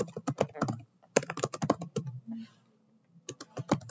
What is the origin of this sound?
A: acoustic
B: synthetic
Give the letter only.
A